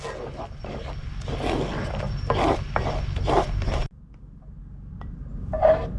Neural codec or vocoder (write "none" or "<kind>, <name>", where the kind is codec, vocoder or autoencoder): none